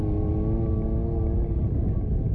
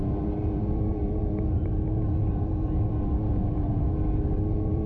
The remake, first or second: second